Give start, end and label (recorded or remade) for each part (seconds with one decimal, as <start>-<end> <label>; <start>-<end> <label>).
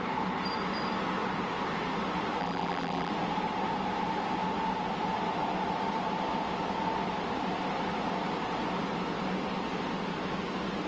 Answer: 0.0-2.4 recorded; 2.4-3.1 remade; 3.1-10.9 recorded